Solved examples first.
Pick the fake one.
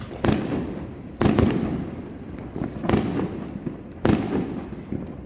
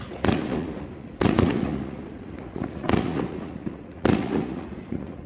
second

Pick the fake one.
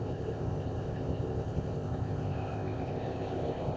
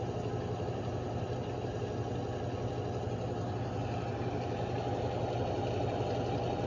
first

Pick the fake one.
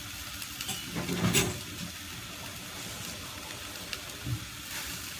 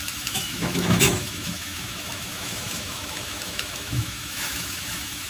second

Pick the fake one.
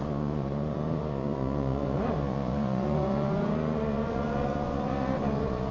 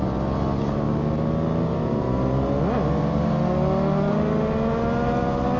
first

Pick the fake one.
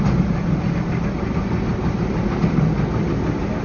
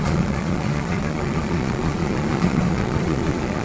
second